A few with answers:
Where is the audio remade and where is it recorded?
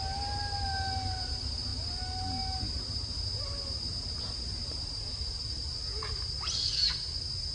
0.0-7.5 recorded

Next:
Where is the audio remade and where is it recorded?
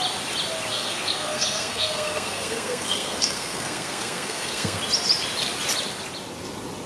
0.0-0.7 recorded; 0.7-4.8 remade; 4.8-6.9 recorded